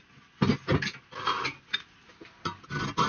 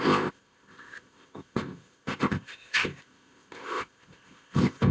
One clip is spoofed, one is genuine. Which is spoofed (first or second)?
second